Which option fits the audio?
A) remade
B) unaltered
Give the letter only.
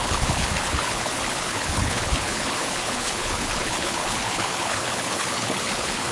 A